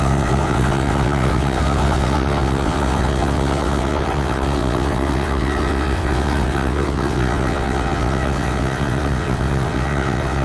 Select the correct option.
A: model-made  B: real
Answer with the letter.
A